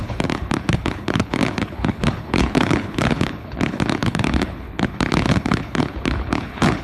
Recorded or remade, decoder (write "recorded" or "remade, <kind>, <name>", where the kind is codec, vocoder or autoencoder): remade, codec, HILCodec